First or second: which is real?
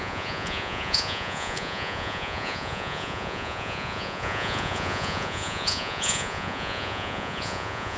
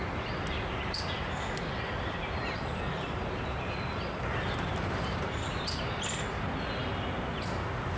second